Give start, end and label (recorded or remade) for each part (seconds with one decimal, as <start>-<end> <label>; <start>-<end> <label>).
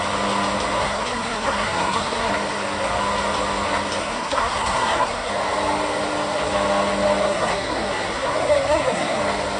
0.0-0.8 recorded; 0.8-2.3 remade; 2.3-4.0 recorded; 4.0-5.3 remade; 5.3-7.2 recorded; 7.2-9.2 remade; 9.2-9.6 recorded